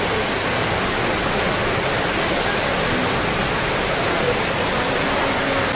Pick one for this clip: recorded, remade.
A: recorded